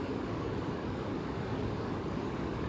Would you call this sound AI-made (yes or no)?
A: yes